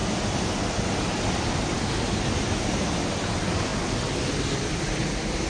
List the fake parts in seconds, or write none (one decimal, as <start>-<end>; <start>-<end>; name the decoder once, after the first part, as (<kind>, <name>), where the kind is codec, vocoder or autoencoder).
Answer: none